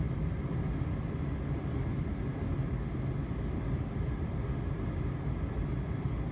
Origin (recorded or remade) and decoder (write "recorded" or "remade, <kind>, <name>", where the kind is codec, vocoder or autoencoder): recorded